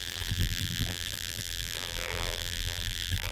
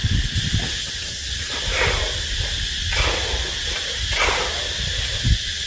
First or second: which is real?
second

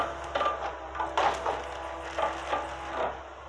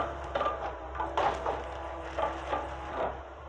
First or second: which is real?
first